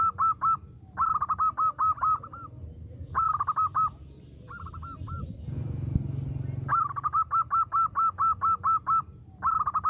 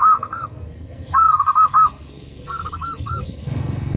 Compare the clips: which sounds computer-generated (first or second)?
second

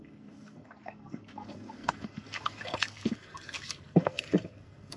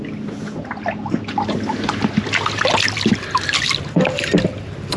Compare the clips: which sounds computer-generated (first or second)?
first